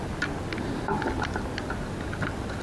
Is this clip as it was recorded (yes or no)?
yes